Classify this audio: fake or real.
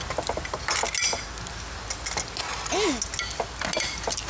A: real